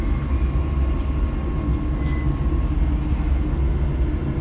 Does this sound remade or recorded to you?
recorded